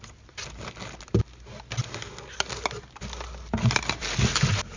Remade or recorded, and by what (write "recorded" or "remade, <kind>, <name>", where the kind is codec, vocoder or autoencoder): recorded